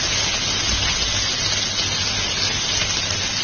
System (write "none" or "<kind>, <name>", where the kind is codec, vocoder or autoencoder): none